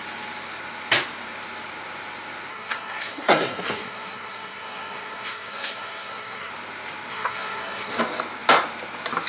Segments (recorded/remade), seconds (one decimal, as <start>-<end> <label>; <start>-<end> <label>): 0.0-2.5 recorded; 2.5-6.5 remade; 6.5-7.1 recorded; 7.1-8.0 remade; 8.0-9.3 recorded